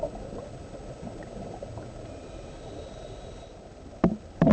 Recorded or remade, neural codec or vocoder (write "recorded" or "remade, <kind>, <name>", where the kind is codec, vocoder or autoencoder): recorded